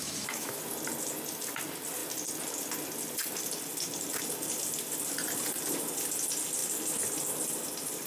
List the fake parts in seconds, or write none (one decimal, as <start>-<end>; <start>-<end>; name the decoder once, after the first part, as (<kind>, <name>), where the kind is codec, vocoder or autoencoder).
0.0-0.6 (autoencoder, DAC-VAE)